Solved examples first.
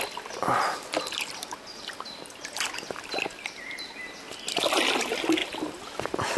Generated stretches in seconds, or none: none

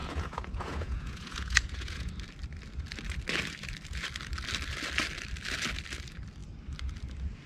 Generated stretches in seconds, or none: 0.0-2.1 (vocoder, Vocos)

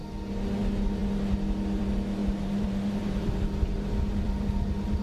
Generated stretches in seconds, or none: 2.2-5.0 (vocoder, BigVGAN v2)

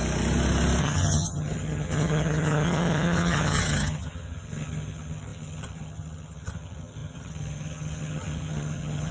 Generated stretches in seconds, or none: 0.8-9.1 (vocoder, HiFi-GAN)

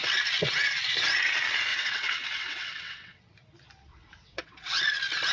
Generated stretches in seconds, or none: 1.7-3.3 (vocoder, WaveNeXt); 3.9-4.8